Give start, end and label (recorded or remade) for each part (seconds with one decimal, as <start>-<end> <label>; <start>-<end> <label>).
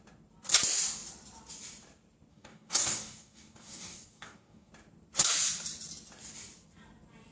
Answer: 0.0-2.3 recorded; 2.3-4.7 remade; 4.7-7.3 recorded